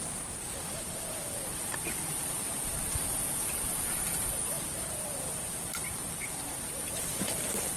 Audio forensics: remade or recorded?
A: remade